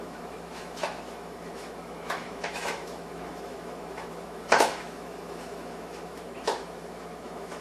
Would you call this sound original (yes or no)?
no